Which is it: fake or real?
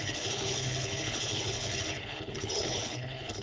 fake